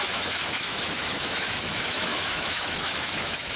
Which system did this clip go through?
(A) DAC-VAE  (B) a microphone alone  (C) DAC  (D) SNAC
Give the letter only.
A